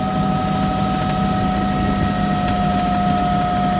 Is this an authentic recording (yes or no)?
yes